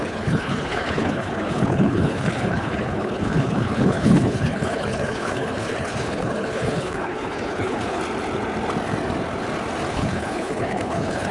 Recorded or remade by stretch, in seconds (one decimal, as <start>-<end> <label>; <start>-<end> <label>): 0.0-8.0 remade; 8.0-9.9 recorded; 9.9-11.3 remade